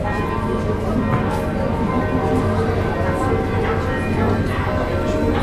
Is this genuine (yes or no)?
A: yes